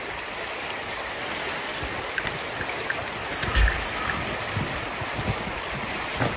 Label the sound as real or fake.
real